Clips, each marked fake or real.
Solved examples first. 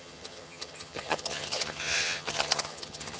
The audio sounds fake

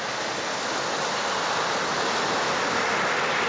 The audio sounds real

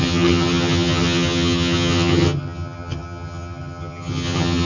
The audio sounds fake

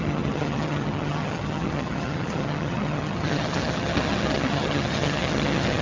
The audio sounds fake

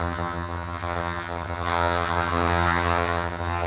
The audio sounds fake